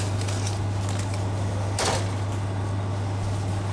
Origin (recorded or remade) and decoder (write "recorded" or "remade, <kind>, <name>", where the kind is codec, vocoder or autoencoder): recorded